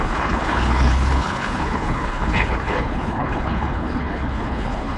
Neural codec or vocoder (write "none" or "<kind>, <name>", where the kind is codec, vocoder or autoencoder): codec, HILCodec